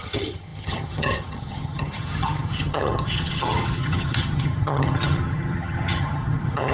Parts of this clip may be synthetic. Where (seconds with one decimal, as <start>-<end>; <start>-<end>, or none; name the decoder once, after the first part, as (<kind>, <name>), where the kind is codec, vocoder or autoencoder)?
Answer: 0.0-6.7 (vocoder, HiFi-GAN)